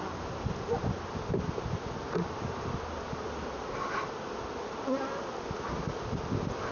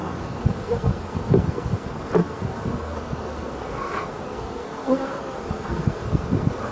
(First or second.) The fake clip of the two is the second